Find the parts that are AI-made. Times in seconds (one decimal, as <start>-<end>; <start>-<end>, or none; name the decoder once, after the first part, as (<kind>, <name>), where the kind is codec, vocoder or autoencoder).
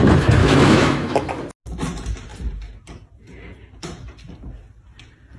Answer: 0.4-1.3 (autoencoder, DAC-VAE)